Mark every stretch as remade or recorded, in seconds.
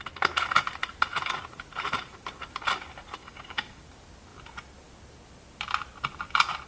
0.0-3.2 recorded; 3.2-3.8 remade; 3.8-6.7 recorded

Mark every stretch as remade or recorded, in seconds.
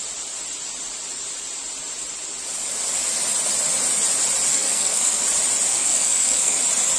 0.0-4.5 recorded; 4.5-5.2 remade; 5.2-5.7 recorded; 5.7-6.6 remade; 6.6-7.0 recorded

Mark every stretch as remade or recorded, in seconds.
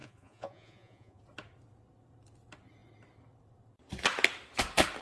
0.0-1.2 remade; 1.2-5.0 recorded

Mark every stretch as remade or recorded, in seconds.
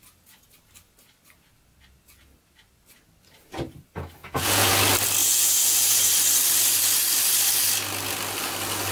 0.0-4.2 recorded; 4.2-4.7 remade; 4.7-5.2 recorded; 5.2-6.1 remade; 6.1-8.9 recorded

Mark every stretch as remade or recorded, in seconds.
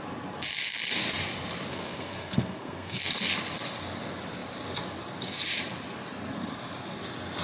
0.0-1.7 recorded; 1.7-3.0 remade; 3.0-7.4 recorded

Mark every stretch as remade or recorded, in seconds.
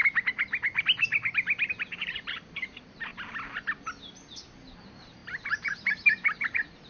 0.0-1.7 recorded; 1.7-3.1 remade; 3.1-4.7 recorded; 4.7-6.9 remade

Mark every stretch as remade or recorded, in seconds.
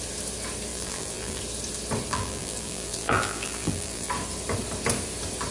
0.0-0.7 recorded; 0.7-1.4 remade; 1.4-2.1 recorded; 2.1-4.1 remade; 4.1-5.5 recorded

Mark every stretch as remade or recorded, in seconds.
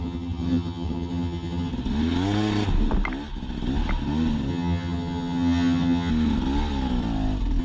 0.0-1.7 remade; 1.7-4.5 recorded; 4.5-6.1 remade; 6.1-7.6 recorded